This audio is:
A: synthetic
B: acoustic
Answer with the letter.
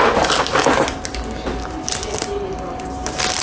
B